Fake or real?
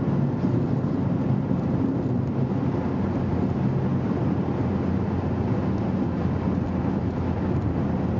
real